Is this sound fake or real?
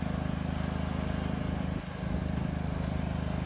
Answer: real